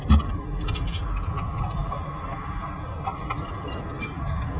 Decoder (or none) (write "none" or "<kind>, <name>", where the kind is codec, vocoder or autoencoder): none